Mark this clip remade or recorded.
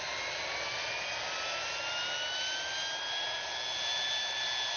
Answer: recorded